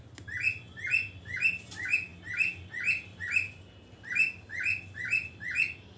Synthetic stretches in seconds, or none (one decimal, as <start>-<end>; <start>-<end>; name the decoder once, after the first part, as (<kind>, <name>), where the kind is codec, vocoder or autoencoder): none